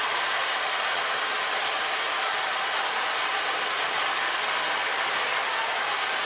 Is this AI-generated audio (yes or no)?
no